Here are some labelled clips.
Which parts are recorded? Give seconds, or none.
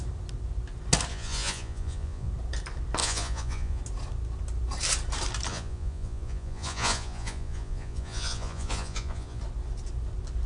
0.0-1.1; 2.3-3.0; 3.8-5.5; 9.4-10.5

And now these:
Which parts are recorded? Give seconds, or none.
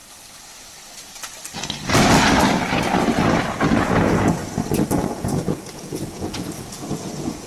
0.0-3.8; 4.4-5.0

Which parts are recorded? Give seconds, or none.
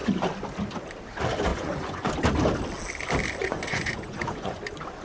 0.0-1.5; 2.1-3.4; 4.6-5.0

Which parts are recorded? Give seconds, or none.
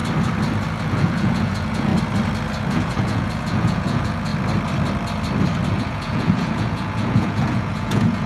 0.0-0.8; 1.9-2.7; 4.3-5.7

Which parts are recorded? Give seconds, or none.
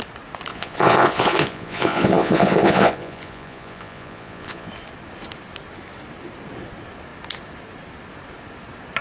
0.0-0.5; 4.7-9.0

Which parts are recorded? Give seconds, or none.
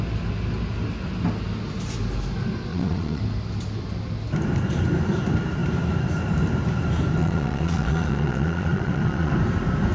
0.0-2.7; 3.2-7.2; 9.3-9.9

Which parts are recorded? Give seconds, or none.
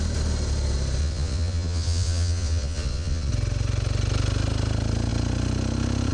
0.0-1.0; 3.3-6.1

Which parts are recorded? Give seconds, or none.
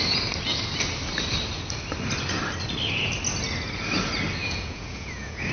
0.0-4.4